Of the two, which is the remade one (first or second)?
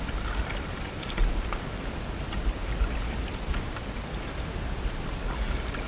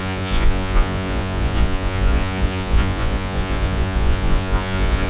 second